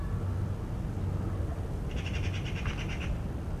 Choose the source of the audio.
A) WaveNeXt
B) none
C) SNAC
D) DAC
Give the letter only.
B